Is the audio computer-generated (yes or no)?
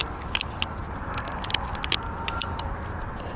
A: no